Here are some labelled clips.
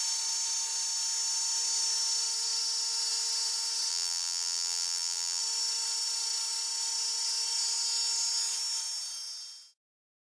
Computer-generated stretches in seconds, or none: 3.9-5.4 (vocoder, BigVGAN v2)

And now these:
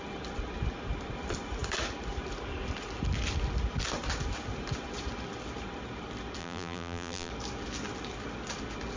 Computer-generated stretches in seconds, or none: 6.4-7.3 (vocoder, BigVGAN v2)

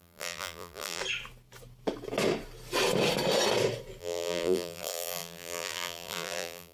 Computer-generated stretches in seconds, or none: 0.0-1.0 (vocoder, BigVGAN v2); 4.0-6.7

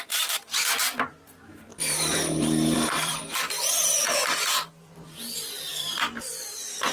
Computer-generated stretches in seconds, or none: 0.0-6.9 (vocoder, BigVGAN v2)

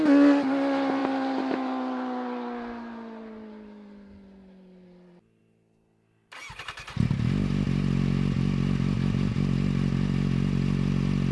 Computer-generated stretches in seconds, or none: none

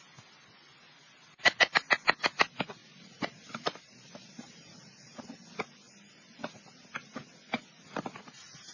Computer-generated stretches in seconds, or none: 2.8-5.2 (vocoder, BigVGAN v2)